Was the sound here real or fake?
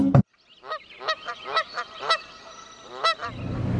real